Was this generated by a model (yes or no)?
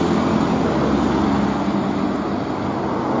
no